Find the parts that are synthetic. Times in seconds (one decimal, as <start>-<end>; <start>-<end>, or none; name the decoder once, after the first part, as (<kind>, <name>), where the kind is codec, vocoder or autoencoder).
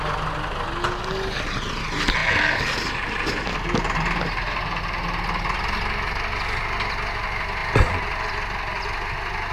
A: none